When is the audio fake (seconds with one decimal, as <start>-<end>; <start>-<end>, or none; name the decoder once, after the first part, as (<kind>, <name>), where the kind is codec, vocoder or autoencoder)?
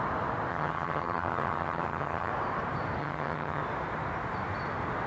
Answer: 0.5-2.3 (vocoder, HiFi-GAN); 3.0-3.6